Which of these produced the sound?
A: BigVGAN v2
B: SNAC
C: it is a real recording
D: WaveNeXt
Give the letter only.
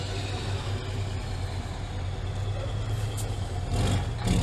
C